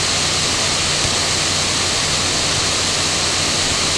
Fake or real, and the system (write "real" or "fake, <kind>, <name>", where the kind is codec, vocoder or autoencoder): real